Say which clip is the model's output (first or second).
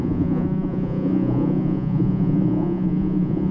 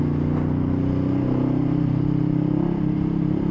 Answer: first